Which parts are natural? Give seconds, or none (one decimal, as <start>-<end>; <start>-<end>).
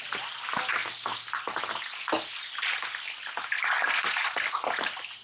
0.0-5.2